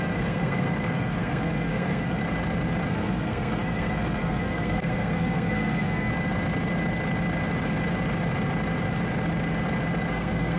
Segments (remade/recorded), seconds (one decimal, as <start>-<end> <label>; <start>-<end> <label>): 0.0-2.2 remade; 2.2-2.9 recorded; 2.9-6.1 remade; 6.1-10.1 recorded; 10.1-10.6 remade